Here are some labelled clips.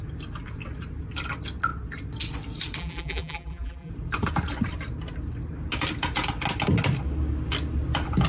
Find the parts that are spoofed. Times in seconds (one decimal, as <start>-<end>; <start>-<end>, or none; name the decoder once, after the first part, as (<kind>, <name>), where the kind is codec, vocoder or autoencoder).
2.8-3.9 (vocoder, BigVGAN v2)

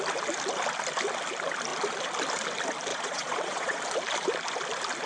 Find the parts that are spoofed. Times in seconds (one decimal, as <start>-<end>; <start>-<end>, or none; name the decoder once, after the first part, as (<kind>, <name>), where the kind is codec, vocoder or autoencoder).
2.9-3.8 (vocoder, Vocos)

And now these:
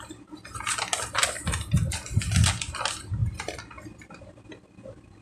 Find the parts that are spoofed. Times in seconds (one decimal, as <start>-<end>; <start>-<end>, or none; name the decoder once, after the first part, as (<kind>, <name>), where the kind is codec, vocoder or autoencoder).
none

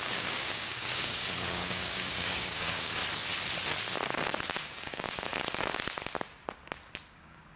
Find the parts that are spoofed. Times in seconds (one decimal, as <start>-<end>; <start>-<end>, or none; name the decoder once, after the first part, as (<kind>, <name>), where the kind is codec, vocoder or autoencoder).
0.0-3.0 (codec, DAC); 4.6-5.3; 7.1-7.6